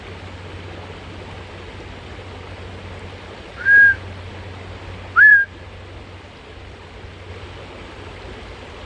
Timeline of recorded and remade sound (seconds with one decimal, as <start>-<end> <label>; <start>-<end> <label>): 0.0-8.9 recorded